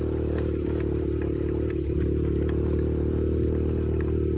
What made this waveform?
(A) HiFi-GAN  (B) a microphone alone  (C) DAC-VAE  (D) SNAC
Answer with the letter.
B